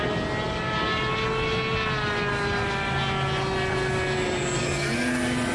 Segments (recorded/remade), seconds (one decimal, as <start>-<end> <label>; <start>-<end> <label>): 0.0-5.5 recorded